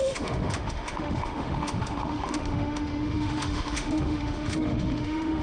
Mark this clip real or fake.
fake